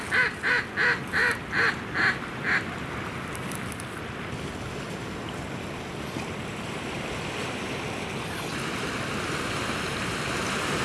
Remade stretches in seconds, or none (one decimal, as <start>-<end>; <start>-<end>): none